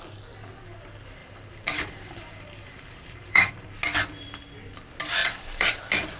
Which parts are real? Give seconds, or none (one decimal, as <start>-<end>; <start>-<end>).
0.0-1.2; 3.5-5.2; 5.8-6.2